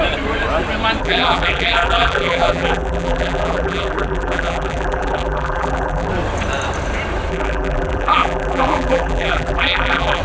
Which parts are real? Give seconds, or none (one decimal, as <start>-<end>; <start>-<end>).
0.0-1.0; 6.1-7.3